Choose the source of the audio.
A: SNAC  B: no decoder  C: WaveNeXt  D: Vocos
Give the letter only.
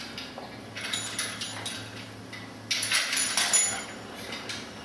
B